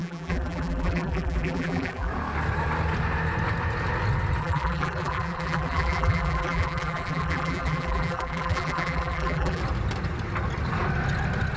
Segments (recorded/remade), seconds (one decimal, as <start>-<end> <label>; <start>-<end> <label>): 0.0-2.1 remade; 2.1-4.4 recorded; 4.4-9.6 remade; 9.6-11.6 recorded